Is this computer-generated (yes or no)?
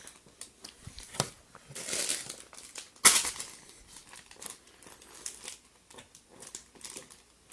no